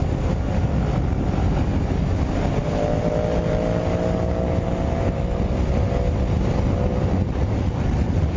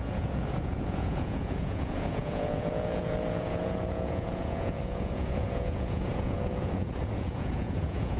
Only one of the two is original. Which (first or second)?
first